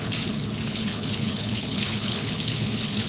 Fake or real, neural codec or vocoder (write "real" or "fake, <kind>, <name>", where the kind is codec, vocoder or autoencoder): fake, codec, HILCodec